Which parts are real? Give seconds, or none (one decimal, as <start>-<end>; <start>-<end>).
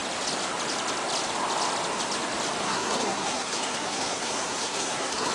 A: 0.0-2.6